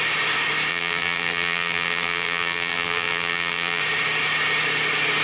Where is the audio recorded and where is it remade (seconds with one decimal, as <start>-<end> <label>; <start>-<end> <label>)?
0.0-0.7 recorded; 0.7-3.8 remade; 3.8-5.2 recorded